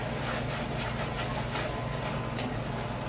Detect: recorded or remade recorded